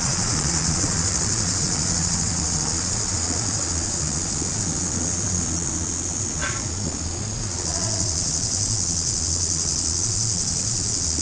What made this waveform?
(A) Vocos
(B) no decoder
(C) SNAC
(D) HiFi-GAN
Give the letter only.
A